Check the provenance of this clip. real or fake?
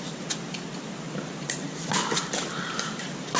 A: real